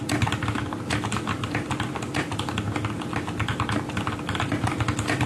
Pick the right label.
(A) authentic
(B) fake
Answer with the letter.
A